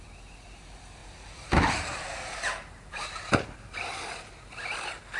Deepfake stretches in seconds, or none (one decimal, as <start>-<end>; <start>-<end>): 1.0-3.8